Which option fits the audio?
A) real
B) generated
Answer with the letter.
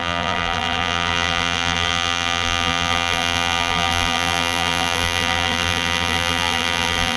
B